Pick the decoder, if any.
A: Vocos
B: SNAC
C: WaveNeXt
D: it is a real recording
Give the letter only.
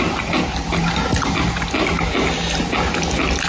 D